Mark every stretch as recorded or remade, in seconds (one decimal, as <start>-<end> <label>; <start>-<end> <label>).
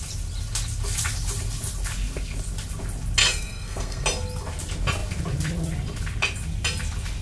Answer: 0.0-3.2 recorded; 3.2-4.0 remade; 4.0-7.2 recorded